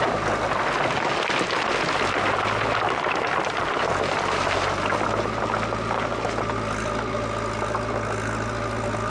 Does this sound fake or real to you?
real